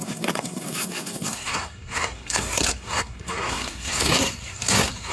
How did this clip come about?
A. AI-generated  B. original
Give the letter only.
A